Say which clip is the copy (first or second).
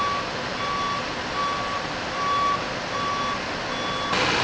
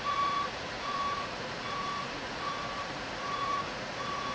second